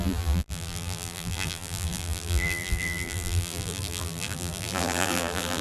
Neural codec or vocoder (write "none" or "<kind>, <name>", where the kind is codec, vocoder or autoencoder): vocoder, BigVGAN v2